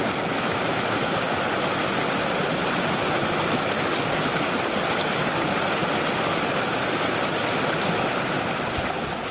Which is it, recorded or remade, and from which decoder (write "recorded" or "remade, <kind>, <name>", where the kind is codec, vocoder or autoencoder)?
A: recorded